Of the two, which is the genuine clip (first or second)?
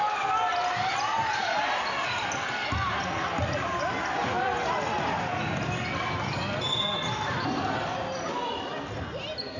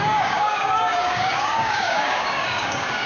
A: first